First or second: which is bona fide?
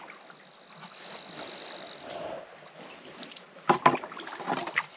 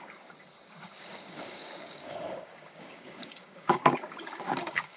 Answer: first